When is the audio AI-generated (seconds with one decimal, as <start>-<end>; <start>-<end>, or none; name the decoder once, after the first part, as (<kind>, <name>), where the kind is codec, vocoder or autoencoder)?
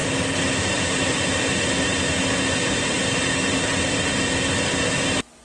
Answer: none